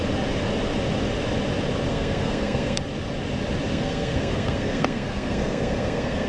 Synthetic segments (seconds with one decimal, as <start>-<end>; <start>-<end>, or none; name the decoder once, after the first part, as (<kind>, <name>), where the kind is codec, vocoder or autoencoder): 1.9-2.8 (codec, SNAC); 3.7-6.3